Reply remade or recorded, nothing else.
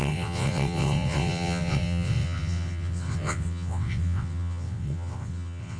remade